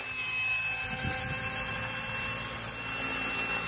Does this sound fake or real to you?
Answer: real